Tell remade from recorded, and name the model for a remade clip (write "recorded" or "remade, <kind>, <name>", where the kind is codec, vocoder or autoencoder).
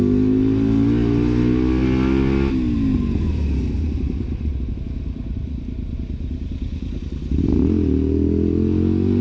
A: recorded